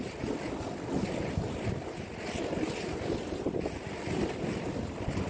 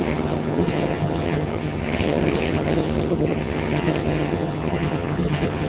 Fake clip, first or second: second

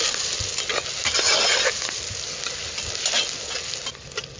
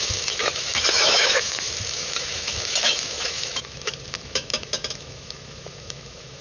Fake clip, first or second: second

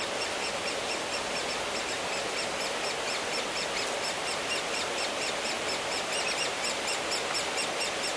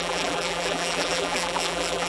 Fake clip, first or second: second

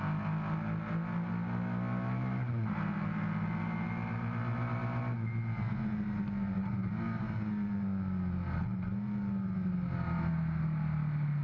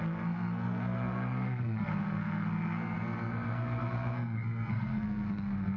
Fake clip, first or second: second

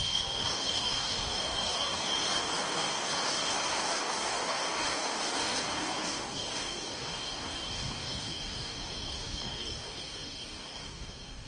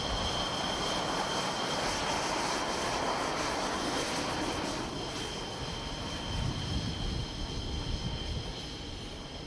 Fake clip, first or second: first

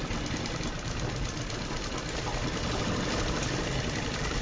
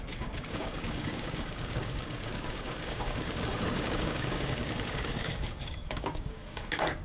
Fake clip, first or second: second